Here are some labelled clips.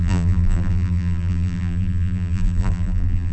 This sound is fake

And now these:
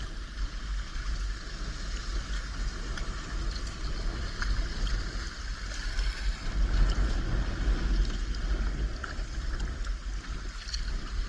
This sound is real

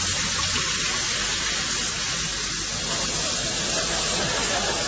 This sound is real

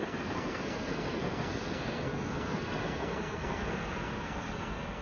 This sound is fake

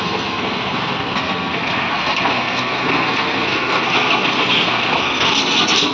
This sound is fake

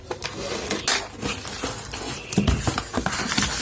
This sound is real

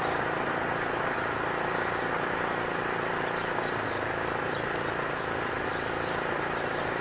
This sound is real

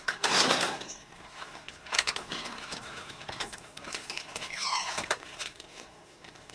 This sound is fake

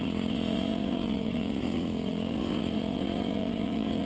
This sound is fake